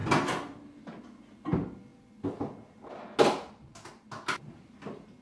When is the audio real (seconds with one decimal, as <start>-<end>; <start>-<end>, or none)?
0.0-5.2